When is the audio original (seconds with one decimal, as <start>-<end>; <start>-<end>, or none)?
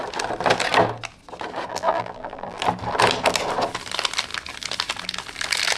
0.0-1.7; 2.6-5.8